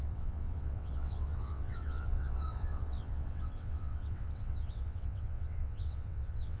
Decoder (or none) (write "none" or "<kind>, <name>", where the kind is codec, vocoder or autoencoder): vocoder, WaveNeXt